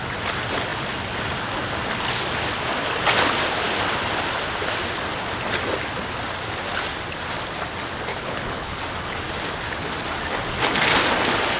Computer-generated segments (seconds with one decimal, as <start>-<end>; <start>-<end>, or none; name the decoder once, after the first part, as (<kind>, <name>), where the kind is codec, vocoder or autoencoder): 8.1-8.8 (codec, HILCodec)